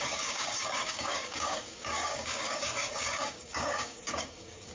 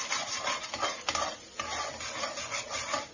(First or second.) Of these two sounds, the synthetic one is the first